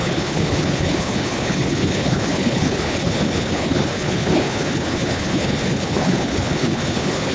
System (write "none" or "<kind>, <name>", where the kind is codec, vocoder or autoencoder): codec, HILCodec